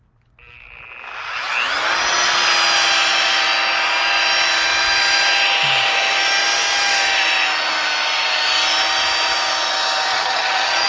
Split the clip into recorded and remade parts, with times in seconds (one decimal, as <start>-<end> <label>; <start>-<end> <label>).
0.0-10.1 recorded; 10.1-10.9 remade